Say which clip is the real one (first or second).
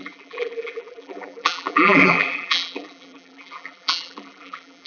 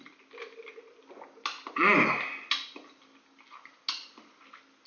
second